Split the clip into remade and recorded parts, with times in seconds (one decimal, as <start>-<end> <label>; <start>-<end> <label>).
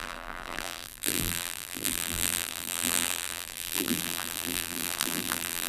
0.0-5.7 remade